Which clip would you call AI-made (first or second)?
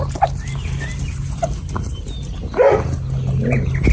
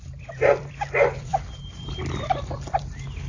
second